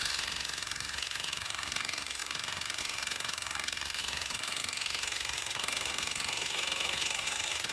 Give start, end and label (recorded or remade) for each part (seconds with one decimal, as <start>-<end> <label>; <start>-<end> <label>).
0.0-7.7 remade